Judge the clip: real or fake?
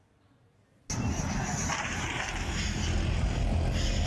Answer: real